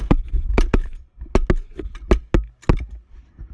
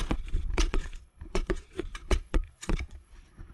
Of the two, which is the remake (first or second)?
second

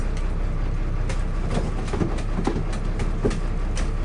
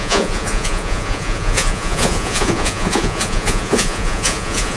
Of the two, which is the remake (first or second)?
second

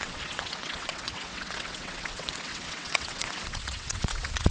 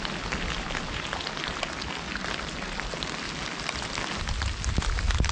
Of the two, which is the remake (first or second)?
first